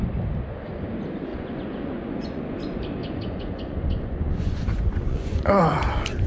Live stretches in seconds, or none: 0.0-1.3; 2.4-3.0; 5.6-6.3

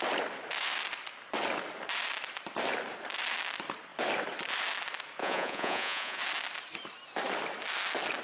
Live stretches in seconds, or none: 0.0-5.2; 6.2-8.2

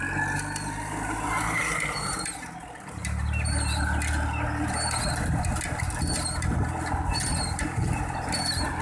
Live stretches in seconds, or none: 0.0-8.8

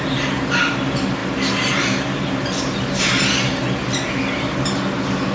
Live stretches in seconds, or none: 0.0-5.3

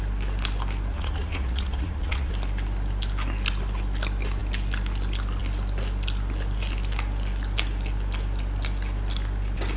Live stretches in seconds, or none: 0.0-0.9; 2.3-9.8

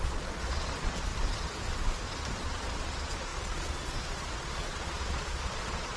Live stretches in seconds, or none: 1.1-2.4

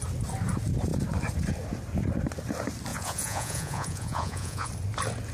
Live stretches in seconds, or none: 0.0-2.9; 4.7-5.3